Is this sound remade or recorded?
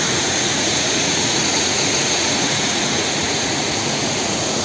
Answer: remade